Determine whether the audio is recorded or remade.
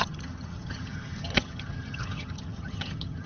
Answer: remade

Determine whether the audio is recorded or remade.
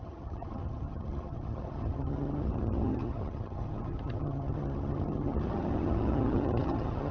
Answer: remade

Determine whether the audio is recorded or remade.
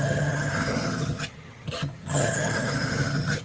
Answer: remade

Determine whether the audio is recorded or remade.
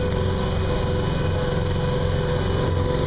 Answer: recorded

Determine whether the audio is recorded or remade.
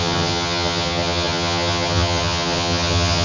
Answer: remade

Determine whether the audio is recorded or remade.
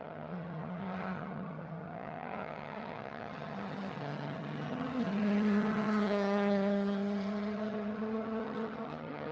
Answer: remade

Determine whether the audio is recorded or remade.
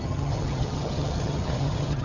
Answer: remade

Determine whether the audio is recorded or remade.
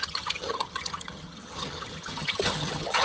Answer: remade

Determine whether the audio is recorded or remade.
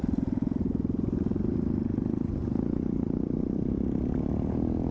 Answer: recorded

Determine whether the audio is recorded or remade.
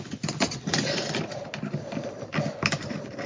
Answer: recorded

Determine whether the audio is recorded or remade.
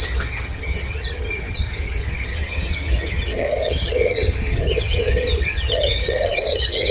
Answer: remade